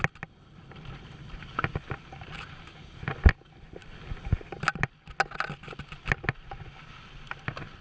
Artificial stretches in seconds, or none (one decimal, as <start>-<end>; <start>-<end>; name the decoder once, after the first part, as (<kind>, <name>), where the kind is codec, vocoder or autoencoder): none